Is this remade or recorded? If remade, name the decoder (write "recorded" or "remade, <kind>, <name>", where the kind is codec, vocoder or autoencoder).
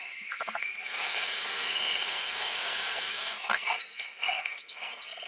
remade, codec, SNAC